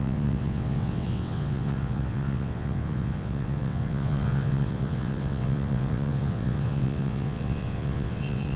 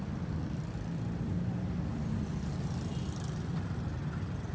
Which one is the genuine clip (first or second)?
second